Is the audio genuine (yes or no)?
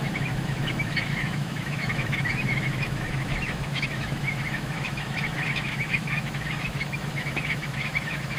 no